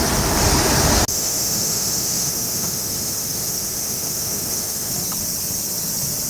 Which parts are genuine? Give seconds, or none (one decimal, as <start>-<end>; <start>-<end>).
0.0-1.1; 4.9-6.3